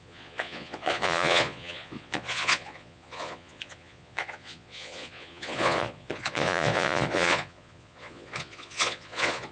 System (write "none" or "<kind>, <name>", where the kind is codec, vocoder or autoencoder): vocoder, Vocos